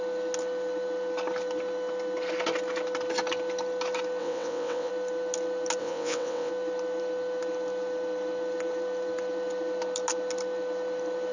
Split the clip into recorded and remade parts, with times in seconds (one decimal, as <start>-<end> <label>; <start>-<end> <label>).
0.0-4.2 recorded; 4.2-4.9 remade; 4.9-5.8 recorded; 5.8-6.5 remade; 6.5-11.3 recorded